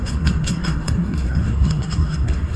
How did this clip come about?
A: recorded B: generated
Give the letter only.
B